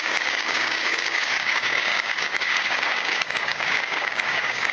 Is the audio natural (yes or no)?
no